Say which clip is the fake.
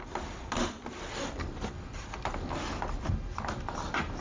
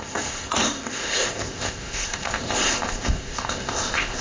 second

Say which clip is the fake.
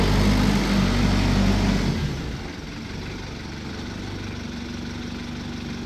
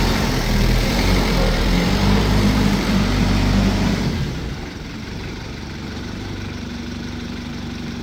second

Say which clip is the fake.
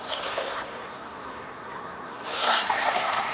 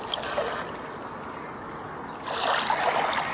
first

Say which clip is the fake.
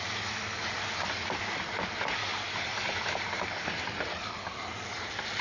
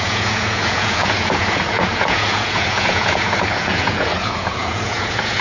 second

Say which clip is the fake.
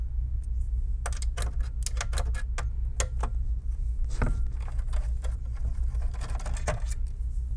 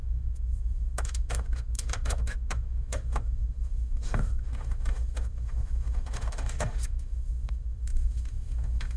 second